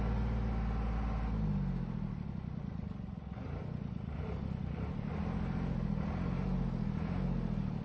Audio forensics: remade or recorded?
recorded